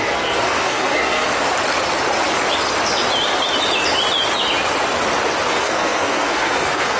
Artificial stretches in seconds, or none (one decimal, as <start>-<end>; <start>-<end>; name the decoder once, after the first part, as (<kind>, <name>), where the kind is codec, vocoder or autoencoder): 0.0-1.3 (codec, SNAC); 5.5-7.0